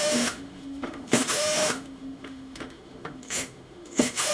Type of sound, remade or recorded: remade